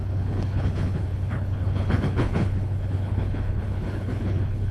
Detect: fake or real fake